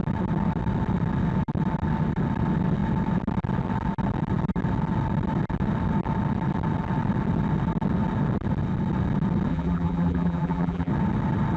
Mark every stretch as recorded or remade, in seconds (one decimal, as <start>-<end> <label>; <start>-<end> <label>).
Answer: 0.0-9.5 recorded; 9.5-10.9 remade; 10.9-11.6 recorded